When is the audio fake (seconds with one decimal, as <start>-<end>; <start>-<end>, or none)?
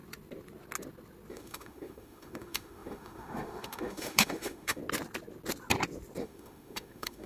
1.3-4.8; 6.2-7.3